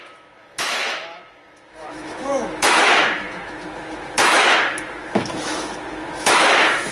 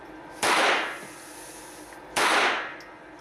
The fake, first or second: first